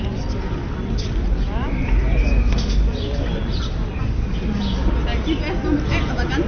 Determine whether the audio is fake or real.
real